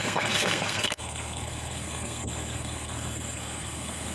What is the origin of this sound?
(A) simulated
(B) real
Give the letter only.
A